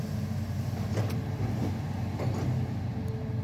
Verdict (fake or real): real